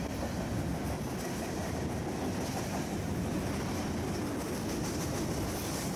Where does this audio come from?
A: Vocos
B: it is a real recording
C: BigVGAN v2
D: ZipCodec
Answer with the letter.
B